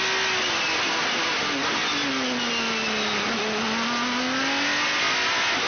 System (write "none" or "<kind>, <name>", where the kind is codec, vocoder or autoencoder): none